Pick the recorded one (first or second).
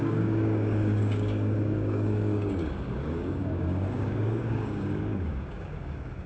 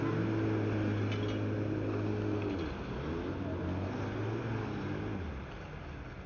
second